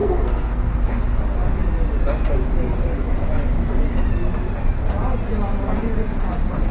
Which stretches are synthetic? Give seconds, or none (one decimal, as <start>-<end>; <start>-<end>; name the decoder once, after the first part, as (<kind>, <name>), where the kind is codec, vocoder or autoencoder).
0.0-1.0 (codec, SNAC)